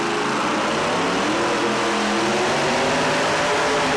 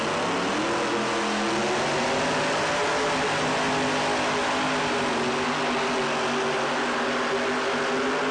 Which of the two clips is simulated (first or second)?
first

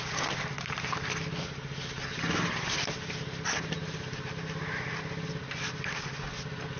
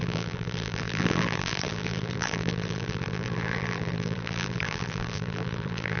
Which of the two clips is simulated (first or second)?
second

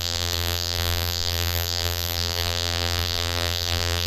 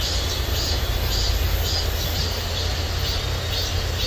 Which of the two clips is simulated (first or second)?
first